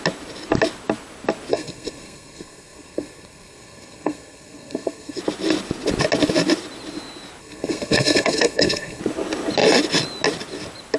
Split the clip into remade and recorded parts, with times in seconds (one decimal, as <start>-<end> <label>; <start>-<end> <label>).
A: 0.0-1.5 recorded; 1.5-5.2 remade; 5.2-7.4 recorded; 7.4-9.0 remade; 9.0-11.0 recorded